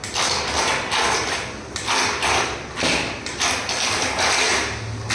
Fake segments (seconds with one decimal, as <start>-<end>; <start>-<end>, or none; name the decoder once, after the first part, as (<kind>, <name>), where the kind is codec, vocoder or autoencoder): none